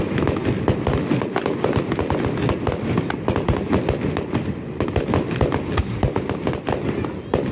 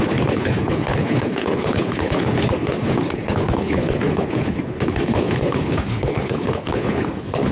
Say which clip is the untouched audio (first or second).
first